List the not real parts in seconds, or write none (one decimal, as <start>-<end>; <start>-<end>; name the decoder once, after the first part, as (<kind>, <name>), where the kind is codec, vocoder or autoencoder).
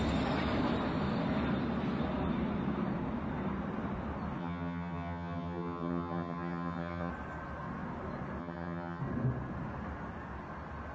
4.4-7.1 (vocoder, HiFi-GAN); 8.4-9.0